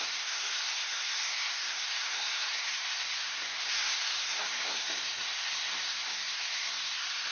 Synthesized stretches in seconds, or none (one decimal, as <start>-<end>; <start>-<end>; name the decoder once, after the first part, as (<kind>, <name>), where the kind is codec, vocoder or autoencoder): 0.0-7.3 (codec, SNAC)